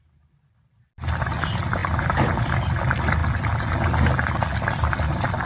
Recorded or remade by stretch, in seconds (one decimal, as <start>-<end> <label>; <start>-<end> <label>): 0.0-1.8 recorded; 1.8-2.5 remade; 2.5-5.5 recorded